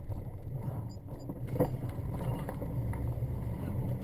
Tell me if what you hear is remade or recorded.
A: recorded